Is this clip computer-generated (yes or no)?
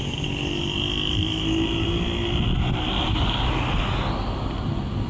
no